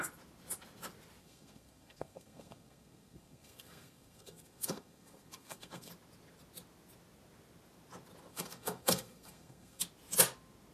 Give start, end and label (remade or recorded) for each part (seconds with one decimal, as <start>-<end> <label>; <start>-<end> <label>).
0.0-1.2 recorded; 1.2-5.9 remade; 5.9-8.3 recorded; 8.3-9.8 remade; 9.8-10.7 recorded